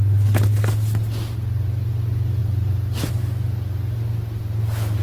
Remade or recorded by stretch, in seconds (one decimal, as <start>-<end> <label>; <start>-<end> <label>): 0.0-2.4 recorded; 2.4-3.1 remade; 3.1-5.0 recorded

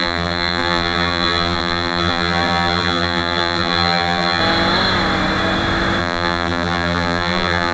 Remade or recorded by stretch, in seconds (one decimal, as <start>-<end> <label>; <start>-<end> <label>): 0.0-4.4 remade; 4.4-6.0 recorded; 6.0-7.7 remade